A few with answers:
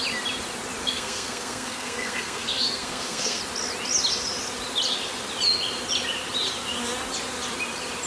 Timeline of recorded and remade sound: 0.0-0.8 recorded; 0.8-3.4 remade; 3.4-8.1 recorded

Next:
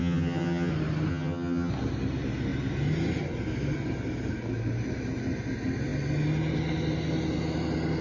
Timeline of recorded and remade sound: 0.0-0.7 remade; 0.7-1.1 recorded; 1.1-1.7 remade; 1.7-8.0 recorded

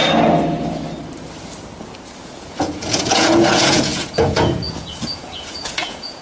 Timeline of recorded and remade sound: 0.0-2.2 recorded; 2.2-6.2 remade